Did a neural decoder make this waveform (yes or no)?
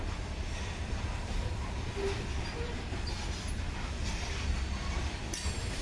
no